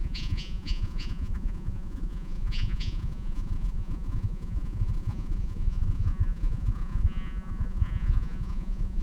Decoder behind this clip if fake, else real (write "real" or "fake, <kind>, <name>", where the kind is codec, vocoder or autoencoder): fake, vocoder, Vocos